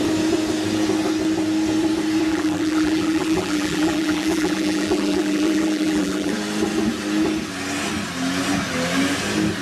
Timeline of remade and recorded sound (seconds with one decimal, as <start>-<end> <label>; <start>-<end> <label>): 0.0-2.3 recorded; 2.3-6.3 remade; 6.3-9.6 recorded